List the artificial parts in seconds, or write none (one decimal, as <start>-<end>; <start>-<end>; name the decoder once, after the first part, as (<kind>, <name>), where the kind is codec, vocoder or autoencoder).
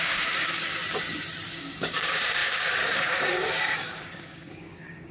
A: 0.0-0.8 (codec, DAC); 1.5-5.1